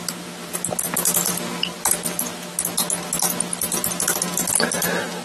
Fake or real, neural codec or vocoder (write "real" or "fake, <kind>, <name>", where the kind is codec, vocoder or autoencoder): real